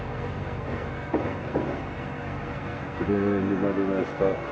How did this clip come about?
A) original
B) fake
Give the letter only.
B